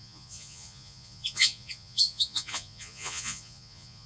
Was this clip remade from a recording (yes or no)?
yes